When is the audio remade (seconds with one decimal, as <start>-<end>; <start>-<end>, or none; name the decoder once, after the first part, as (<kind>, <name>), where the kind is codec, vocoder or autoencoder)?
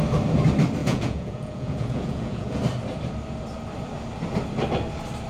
0.8-2.6 (vocoder, Vocos)